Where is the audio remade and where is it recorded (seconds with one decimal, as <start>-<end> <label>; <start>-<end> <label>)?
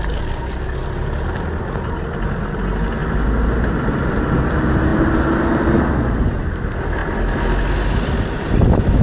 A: 0.0-9.0 recorded